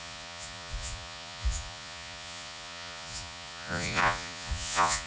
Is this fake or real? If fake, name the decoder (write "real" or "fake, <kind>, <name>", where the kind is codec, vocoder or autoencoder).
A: fake, vocoder, Vocos